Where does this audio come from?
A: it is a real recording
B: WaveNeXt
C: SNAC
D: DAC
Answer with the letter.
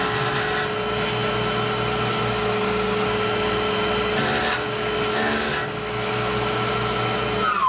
A